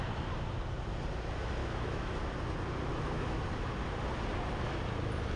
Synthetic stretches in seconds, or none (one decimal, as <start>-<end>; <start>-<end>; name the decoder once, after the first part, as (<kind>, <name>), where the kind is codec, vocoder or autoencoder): 1.6-2.3 (autoencoder, DAC-VAE); 2.9-3.4